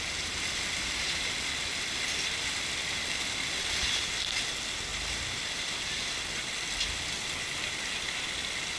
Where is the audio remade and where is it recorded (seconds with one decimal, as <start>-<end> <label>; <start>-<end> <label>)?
0.0-8.8 recorded